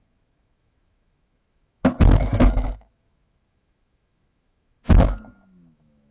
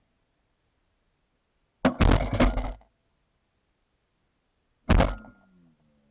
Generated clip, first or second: first